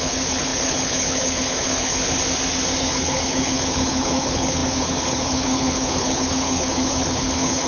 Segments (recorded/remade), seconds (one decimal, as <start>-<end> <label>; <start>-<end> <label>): 0.0-2.2 remade; 2.2-2.8 recorded; 2.8-7.7 remade